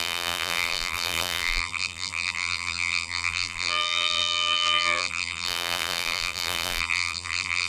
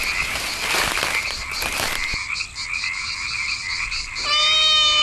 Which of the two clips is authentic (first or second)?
second